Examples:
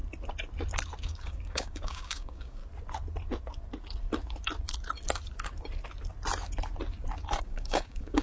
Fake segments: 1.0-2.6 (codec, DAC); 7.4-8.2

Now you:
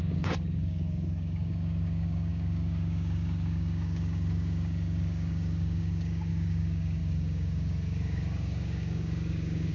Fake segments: 0.0-9.7 (codec, DAC)

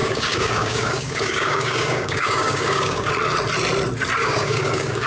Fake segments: 0.0-3.1 (codec, DAC); 4.2-5.1

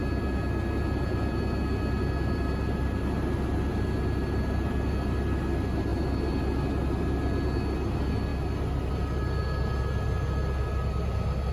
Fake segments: none